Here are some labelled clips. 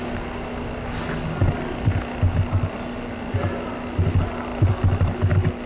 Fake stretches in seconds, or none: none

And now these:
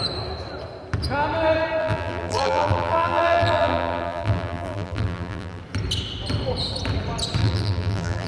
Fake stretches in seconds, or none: 1.8-5.6 (vocoder, BigVGAN v2); 7.4-8.3